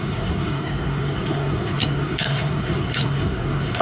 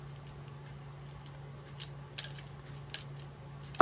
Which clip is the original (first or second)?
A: second